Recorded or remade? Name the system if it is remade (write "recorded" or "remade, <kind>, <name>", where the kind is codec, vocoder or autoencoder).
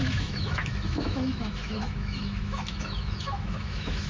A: remade, autoencoder, DAC-VAE